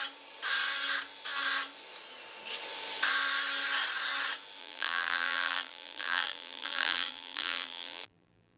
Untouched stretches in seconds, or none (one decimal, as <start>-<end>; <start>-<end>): 0.0-4.6